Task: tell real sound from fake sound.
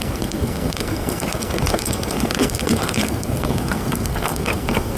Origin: fake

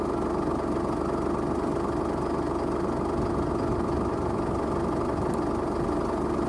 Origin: real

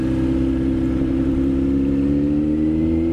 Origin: real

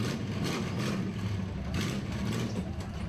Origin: fake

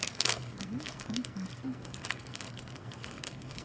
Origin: fake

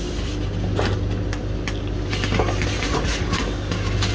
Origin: real